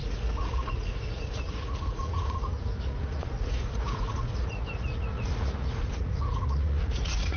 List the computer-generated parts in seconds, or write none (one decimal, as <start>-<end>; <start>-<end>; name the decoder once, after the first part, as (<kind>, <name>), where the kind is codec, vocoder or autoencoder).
0.0-7.4 (vocoder, Vocos)